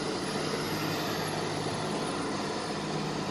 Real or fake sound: real